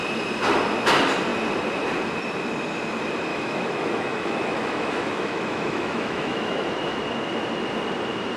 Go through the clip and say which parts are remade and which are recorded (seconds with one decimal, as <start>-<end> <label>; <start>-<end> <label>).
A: 0.0-3.3 recorded; 3.3-7.0 remade; 7.0-8.4 recorded

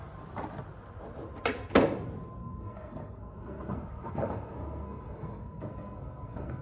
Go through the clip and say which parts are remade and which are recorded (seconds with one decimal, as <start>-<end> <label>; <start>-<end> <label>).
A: 0.0-2.4 recorded; 2.4-6.6 remade

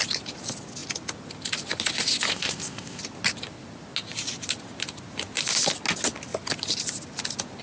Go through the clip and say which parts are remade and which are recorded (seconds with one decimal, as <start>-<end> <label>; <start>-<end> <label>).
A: 0.0-2.3 recorded; 2.3-3.0 remade; 3.0-7.6 recorded

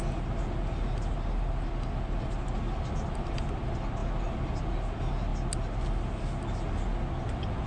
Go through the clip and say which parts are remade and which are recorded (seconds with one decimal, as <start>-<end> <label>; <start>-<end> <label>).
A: 0.0-7.7 recorded

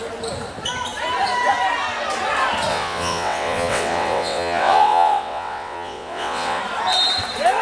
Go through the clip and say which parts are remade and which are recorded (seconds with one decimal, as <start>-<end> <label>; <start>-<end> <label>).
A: 0.0-2.7 recorded; 2.7-6.6 remade; 6.6-7.6 recorded